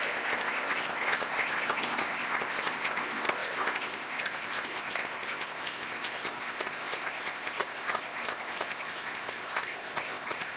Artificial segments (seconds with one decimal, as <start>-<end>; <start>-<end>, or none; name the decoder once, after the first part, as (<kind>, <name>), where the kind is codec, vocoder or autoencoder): 0.0-10.6 (codec, ZipCodec)